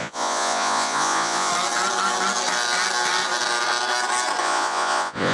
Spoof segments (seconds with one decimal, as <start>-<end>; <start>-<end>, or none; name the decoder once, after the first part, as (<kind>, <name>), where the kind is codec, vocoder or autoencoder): 0.0-1.5 (vocoder, Vocos); 4.4-5.3